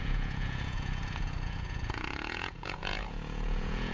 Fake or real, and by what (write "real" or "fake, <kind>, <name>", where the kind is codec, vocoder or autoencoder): fake, vocoder, Vocos